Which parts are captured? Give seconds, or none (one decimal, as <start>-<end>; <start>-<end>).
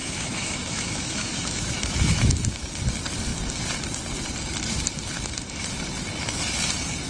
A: 2.7-7.1